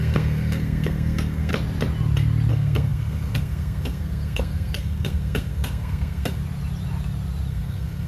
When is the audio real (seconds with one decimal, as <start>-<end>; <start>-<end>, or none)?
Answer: 1.5-2.5; 6.4-7.5